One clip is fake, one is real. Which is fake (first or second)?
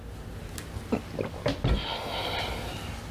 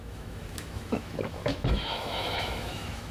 second